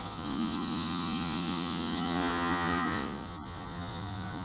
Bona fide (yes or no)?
no